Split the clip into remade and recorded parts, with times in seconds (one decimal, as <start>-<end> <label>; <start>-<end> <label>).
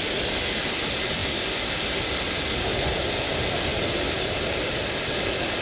0.0-5.6 recorded